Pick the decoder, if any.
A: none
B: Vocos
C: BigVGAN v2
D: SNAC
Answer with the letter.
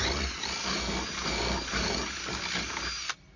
A